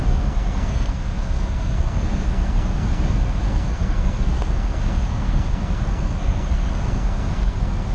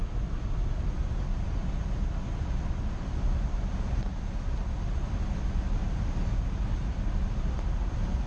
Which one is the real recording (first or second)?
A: second